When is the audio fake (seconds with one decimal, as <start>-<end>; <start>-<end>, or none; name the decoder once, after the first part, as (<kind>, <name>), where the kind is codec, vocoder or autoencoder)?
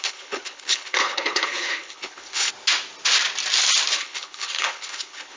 0.0-2.5 (codec, HILCodec); 3.9-5.4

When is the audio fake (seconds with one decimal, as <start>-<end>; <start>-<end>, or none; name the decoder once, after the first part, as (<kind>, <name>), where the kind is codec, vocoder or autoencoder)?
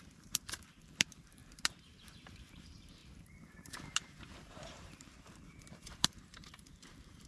0.0-7.3 (vocoder, BigVGAN v2)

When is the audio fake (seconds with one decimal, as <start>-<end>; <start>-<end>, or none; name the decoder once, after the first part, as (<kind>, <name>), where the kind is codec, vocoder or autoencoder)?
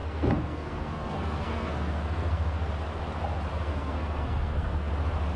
0.0-2.7 (codec, SNAC); 3.5-4.9